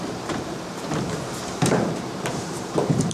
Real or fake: fake